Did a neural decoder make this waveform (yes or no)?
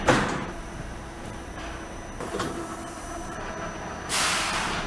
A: yes